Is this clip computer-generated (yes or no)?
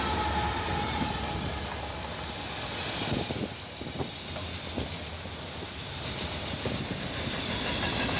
no